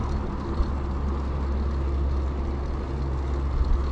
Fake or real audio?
real